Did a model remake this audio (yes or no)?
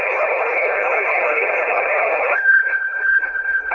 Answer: yes